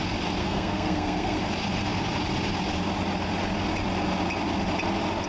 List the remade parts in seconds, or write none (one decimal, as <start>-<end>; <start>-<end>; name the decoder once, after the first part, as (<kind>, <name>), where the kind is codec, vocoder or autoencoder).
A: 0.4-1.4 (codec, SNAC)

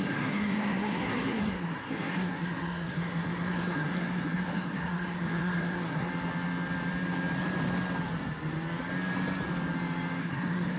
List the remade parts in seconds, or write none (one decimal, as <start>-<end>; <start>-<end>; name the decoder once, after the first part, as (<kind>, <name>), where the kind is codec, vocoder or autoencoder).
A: 0.0-6.1 (codec, SNAC); 10.2-10.8

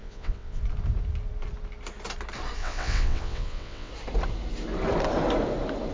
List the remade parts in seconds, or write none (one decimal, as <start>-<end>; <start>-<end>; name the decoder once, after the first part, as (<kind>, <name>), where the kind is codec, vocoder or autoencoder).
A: 0.0-0.6 (vocoder, WaveNeXt); 2.6-3.9